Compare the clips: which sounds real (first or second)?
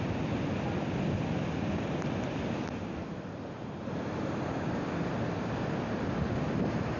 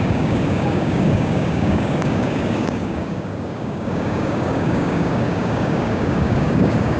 first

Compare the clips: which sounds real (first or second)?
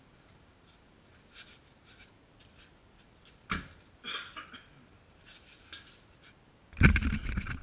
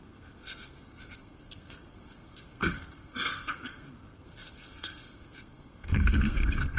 first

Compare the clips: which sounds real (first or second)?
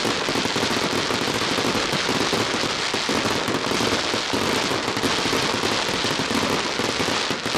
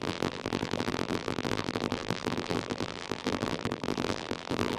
first